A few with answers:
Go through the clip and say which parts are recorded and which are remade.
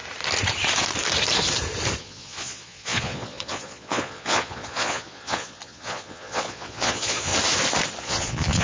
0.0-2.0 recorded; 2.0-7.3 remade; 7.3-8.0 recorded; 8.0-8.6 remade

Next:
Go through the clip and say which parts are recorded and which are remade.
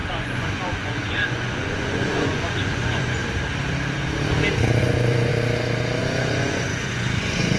0.0-3.2 remade; 3.2-4.8 recorded; 4.8-5.3 remade; 5.3-6.0 recorded; 6.0-7.6 remade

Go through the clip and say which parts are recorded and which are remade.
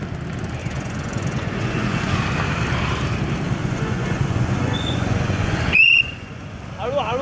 0.0-0.6 recorded; 0.6-2.2 remade; 2.2-3.6 recorded; 3.6-6.6 remade; 6.6-7.2 recorded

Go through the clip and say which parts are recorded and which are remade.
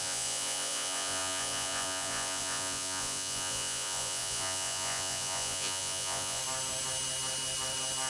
0.0-6.4 remade; 6.4-8.1 recorded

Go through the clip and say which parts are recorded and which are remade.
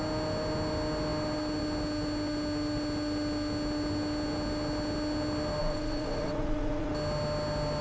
0.0-5.6 recorded; 5.6-6.9 remade; 6.9-7.8 recorded